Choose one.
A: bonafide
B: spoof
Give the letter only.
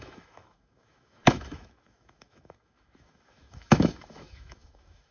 B